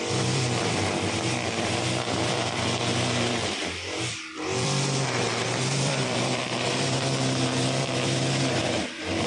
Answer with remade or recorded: remade